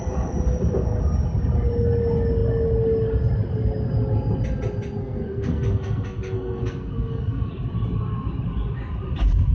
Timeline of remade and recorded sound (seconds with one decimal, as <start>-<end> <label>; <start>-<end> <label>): 0.0-5.0 recorded; 5.0-7.5 remade; 7.5-9.5 recorded